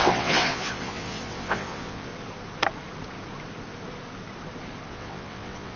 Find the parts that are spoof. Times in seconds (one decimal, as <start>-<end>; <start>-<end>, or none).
0.0-2.1; 4.9-5.8